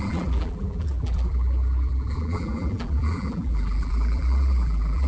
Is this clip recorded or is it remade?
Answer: remade